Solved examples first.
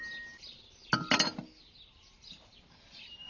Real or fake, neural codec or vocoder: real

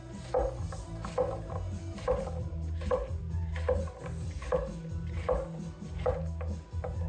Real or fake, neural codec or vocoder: real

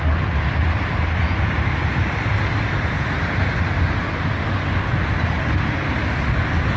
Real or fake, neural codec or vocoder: real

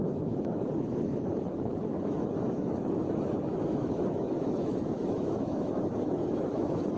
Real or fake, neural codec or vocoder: fake, autoencoder, DAC-VAE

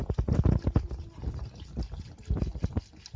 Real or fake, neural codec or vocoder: real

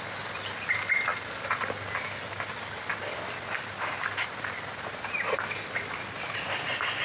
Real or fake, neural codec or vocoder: real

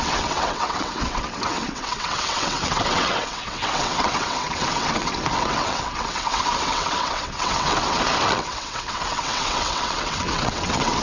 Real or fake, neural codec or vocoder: fake, vocoder, WaveNeXt